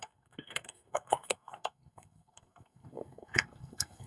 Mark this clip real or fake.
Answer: fake